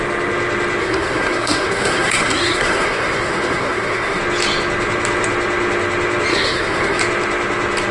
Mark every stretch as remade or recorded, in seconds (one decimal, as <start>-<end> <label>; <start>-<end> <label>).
0.0-0.8 recorded; 0.8-4.2 remade; 4.2-6.3 recorded; 6.3-7.0 remade; 7.0-7.9 recorded